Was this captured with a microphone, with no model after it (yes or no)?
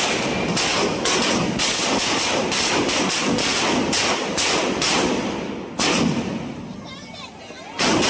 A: yes